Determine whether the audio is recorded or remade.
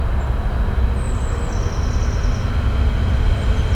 recorded